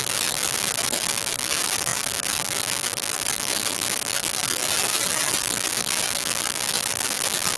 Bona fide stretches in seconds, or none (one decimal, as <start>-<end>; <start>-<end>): 0.0-7.6